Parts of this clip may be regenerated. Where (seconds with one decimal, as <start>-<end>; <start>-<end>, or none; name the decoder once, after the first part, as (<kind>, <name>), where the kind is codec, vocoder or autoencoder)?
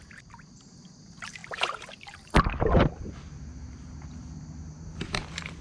none